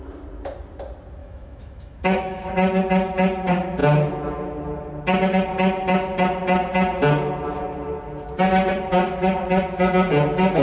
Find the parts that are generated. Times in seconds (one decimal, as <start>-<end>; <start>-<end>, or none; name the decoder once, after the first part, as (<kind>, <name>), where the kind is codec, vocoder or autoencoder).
1.2-2.5 (autoencoder, DAC-VAE)